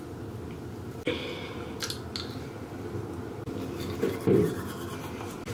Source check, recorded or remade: recorded